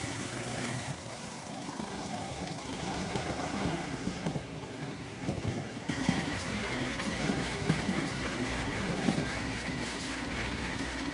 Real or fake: fake